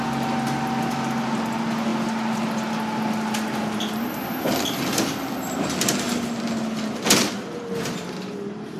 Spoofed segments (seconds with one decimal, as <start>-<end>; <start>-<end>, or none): none

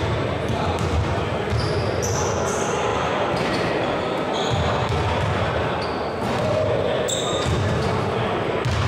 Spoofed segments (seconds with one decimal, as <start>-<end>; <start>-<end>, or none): 2.9-3.7

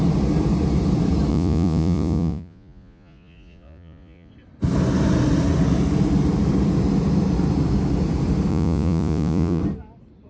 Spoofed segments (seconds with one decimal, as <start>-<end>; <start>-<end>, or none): 1.3-4.3; 8.5-9.6

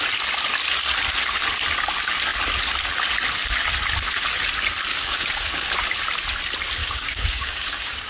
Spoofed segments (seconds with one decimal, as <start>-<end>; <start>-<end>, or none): 4.9-5.7; 6.8-8.1

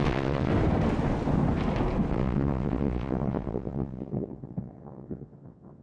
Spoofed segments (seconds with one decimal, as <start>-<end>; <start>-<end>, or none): 0.0-0.5; 2.1-5.8

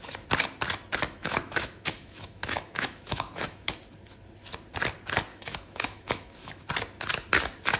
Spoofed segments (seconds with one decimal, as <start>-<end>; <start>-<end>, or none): 1.2-3.7; 5.3-6.6

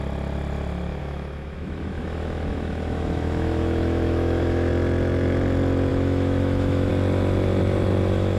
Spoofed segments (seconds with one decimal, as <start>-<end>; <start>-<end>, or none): 1.0-4.7; 5.9-6.9